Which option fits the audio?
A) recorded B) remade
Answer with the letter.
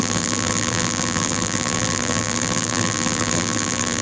B